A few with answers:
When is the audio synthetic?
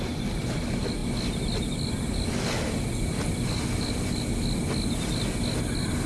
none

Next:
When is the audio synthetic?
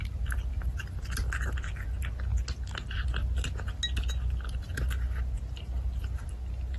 none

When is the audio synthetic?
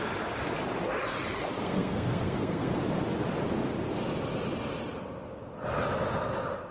1.6-2.7 (codec, SNAC)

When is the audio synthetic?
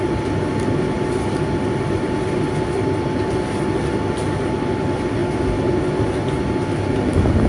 none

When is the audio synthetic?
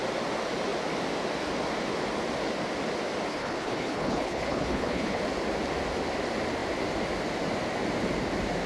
3.3-5.2 (codec, HILCodec)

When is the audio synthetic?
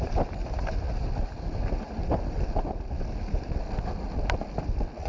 none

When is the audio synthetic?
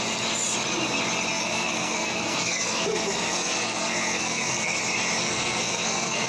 1.3-4.8 (codec, SNAC); 5.2-6.3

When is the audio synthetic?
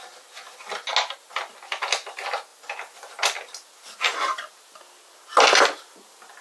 none